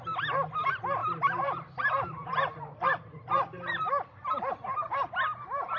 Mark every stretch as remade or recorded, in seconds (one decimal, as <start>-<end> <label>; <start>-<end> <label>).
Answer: 0.0-1.0 recorded; 1.0-4.5 remade; 4.5-5.8 recorded